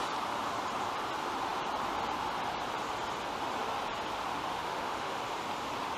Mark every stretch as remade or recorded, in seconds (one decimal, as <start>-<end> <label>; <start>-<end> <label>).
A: 0.0-4.3 recorded; 4.3-5.2 remade; 5.2-6.0 recorded